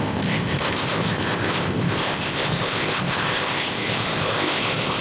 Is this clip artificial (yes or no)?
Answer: yes